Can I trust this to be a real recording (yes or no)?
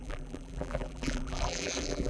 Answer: no